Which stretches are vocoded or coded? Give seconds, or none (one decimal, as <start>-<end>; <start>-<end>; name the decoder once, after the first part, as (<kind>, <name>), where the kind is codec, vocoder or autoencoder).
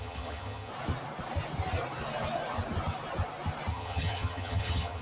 0.0-0.7 (vocoder, HiFi-GAN); 3.7-5.0